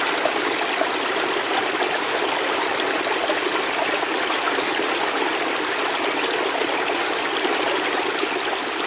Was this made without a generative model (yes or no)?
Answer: yes